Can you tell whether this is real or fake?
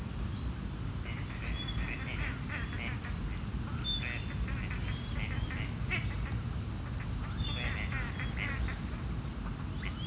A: real